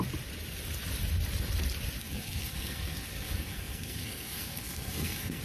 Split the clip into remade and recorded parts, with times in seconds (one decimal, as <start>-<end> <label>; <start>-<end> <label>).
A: 0.0-2.0 recorded; 2.0-5.4 remade